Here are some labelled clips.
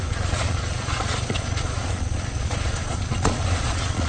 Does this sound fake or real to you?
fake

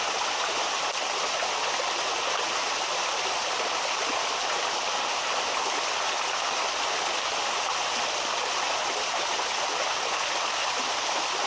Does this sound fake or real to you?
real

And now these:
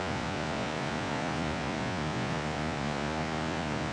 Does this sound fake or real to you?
fake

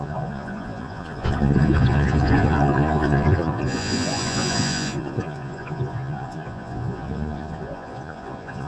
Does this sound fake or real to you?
fake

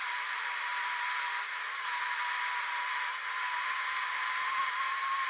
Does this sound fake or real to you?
real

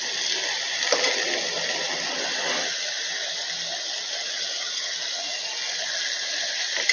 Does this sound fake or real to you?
real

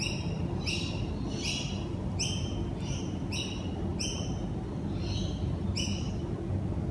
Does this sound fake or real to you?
real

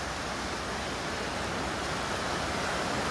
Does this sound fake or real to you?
real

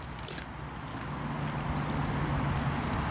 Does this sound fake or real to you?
real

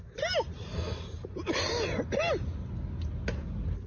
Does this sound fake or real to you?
real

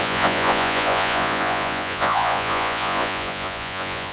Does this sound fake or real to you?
fake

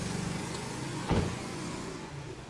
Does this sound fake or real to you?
fake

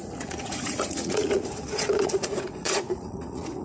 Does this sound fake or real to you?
fake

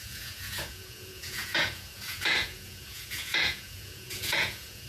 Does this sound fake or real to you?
fake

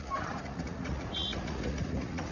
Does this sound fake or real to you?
fake